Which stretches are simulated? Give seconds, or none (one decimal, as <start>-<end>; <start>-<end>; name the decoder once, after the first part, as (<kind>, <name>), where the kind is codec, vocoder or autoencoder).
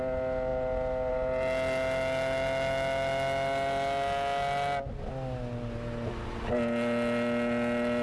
none